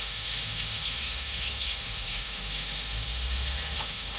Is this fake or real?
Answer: fake